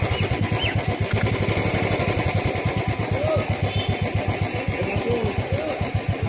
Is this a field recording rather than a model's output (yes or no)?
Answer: yes